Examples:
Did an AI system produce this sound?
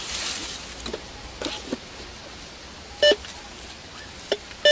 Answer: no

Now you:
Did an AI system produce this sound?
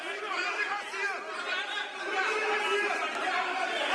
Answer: no